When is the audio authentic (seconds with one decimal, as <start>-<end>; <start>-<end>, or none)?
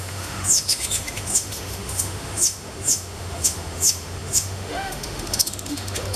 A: none